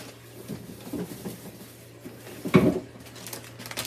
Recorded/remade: recorded